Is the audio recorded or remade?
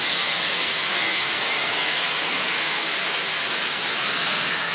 remade